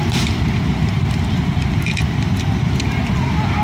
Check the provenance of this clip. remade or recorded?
recorded